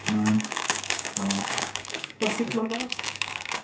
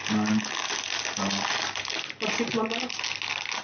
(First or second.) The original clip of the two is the second